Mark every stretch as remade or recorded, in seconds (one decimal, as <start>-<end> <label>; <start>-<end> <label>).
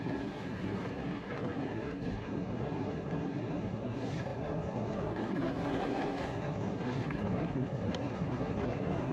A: 0.0-9.1 remade